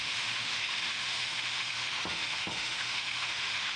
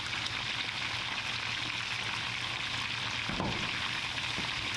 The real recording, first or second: second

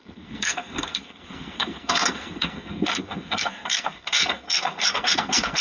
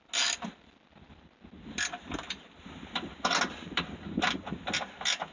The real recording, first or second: second